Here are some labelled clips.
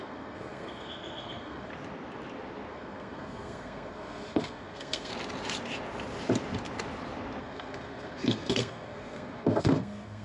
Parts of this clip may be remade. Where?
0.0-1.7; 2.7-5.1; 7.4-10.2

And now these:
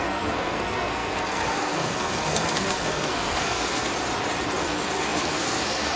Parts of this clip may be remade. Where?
0.0-3.9; 4.6-6.0

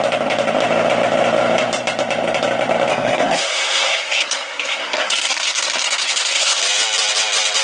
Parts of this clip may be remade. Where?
2.9-6.6

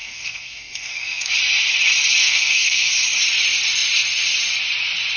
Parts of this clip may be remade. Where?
0.0-1.3; 2.2-2.9

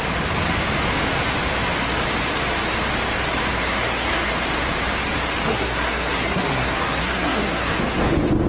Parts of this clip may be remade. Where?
3.5-4.3; 5.5-7.7

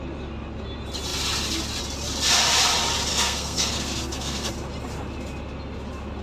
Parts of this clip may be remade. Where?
3.1-4.5

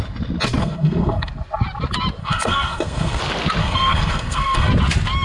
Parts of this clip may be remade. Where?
0.6-1.3; 2.2-3.2; 3.6-4.7

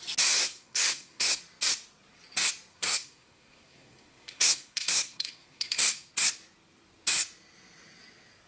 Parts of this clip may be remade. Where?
0.4-1.4; 2.7-6.1